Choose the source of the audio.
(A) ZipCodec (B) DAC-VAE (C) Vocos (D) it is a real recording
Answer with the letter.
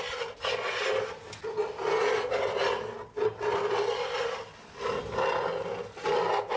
D